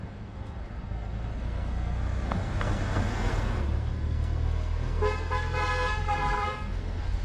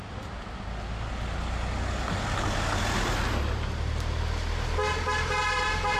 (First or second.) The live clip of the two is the second